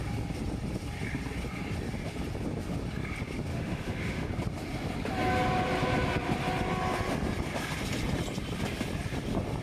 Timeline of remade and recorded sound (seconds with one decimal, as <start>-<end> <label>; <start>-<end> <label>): 0.0-3.5 recorded; 3.5-4.3 remade; 4.3-9.6 recorded